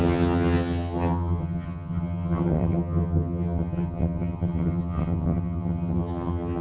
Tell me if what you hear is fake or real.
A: fake